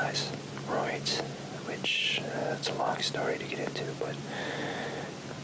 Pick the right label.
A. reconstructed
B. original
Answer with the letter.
B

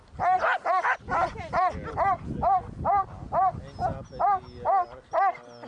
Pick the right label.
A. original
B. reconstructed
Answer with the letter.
A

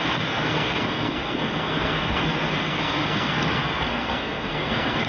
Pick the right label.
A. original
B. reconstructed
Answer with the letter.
B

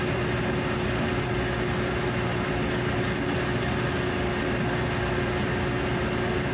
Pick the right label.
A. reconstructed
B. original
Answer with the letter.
B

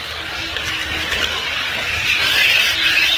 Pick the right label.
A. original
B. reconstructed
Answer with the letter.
A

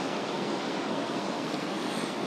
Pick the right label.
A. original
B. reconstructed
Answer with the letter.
B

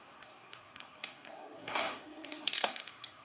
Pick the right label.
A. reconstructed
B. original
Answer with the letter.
A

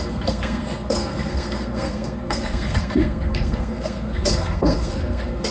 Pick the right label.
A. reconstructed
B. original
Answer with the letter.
A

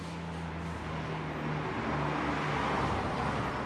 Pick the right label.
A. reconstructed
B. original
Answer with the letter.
B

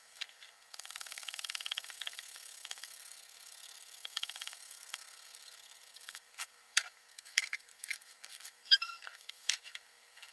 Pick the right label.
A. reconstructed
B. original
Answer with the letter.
A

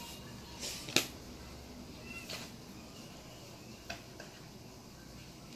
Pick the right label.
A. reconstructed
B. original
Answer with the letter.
B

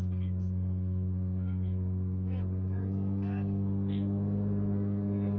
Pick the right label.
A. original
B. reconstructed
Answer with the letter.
B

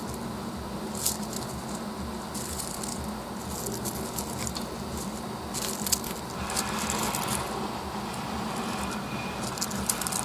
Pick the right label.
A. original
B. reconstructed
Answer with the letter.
A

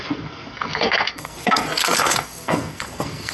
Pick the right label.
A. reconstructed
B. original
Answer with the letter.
A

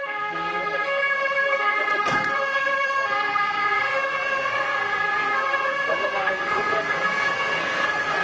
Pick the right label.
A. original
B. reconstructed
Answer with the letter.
B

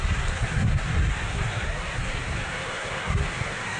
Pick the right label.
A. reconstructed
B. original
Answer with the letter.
A